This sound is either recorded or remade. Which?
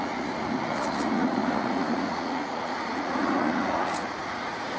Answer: remade